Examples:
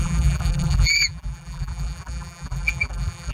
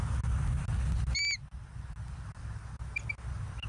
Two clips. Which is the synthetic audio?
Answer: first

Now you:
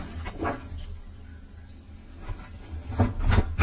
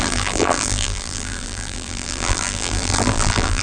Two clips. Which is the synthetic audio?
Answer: second